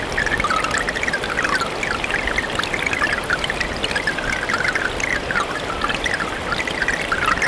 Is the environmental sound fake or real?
real